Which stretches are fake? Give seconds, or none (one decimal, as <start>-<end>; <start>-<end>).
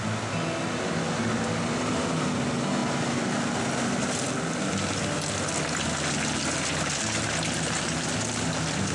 none